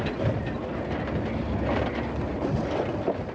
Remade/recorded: recorded